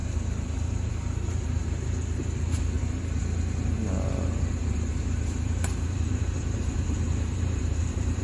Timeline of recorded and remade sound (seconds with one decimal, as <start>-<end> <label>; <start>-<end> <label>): 0.0-1.6 remade; 1.6-4.7 recorded; 4.7-8.2 remade